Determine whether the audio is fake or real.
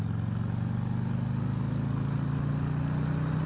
real